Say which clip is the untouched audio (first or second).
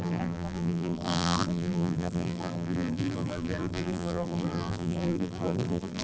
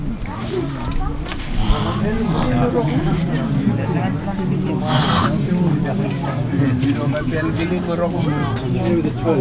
second